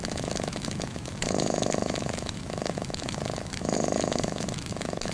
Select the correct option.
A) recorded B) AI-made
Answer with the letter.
B